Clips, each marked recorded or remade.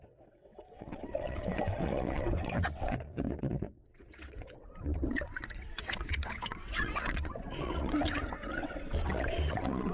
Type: remade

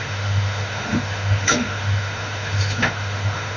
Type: remade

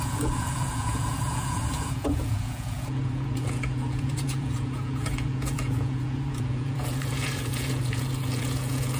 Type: remade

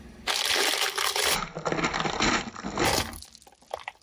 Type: recorded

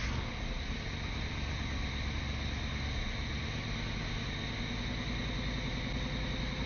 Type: recorded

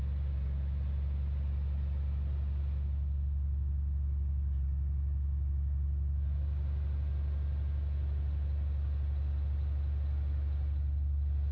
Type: recorded